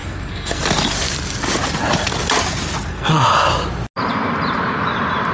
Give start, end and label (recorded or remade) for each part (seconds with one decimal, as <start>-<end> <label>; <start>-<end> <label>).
0.0-0.6 remade; 0.6-2.9 recorded; 2.9-3.5 remade; 3.5-5.3 recorded